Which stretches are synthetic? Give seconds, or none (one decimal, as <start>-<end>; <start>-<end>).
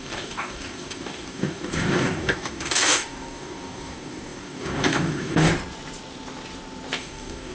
0.0-5.5; 7.0-7.5